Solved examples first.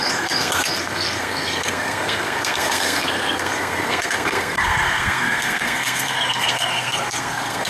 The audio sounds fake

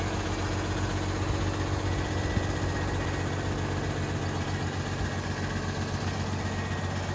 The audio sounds real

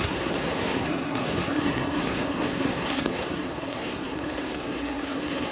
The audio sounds fake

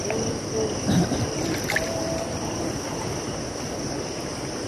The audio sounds real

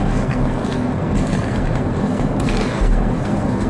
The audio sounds fake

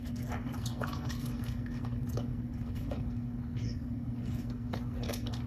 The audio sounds fake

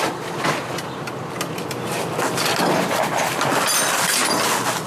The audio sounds real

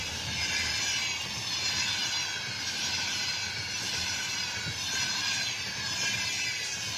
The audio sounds real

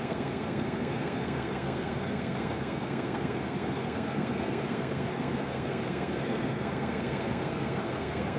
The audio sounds fake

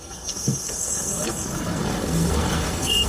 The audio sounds fake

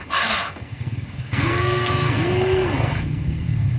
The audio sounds fake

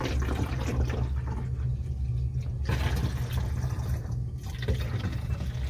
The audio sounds real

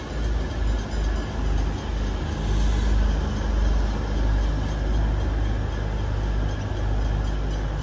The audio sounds real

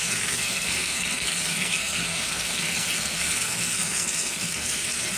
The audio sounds fake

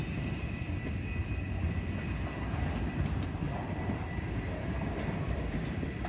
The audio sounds real